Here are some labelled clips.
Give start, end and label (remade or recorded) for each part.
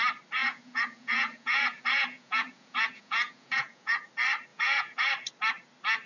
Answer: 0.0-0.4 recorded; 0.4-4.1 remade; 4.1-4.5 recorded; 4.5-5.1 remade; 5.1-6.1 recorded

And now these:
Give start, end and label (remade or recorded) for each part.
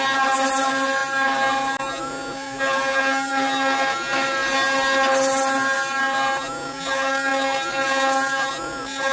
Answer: 0.0-9.1 recorded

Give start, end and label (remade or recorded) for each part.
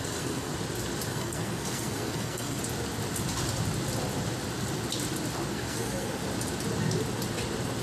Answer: 0.0-0.5 remade; 0.5-1.1 recorded; 1.1-2.6 remade; 2.6-5.5 recorded; 5.5-6.2 remade; 6.2-7.8 recorded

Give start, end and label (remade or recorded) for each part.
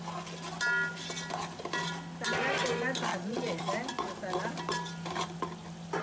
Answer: 0.0-3.1 recorded; 3.1-3.6 remade; 3.6-6.0 recorded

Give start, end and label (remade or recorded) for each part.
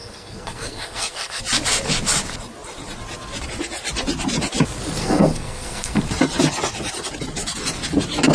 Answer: 0.0-1.4 remade; 1.4-5.0 recorded; 5.0-6.0 remade; 6.0-8.3 recorded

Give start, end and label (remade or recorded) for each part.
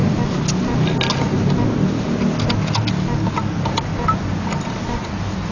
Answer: 0.0-5.5 recorded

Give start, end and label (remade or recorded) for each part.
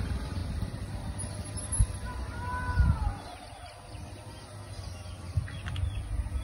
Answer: 0.0-6.4 recorded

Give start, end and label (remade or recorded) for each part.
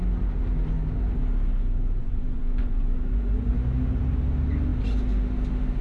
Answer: 0.0-2.0 recorded; 2.0-3.5 remade; 3.5-5.8 recorded